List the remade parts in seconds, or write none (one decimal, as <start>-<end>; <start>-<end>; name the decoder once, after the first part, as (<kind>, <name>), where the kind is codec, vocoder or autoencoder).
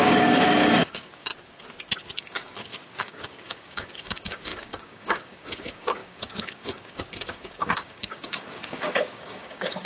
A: 0.0-1.3 (codec, DAC); 2.2-9.9